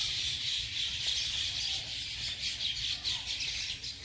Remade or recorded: recorded